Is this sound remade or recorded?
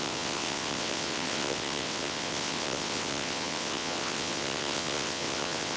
remade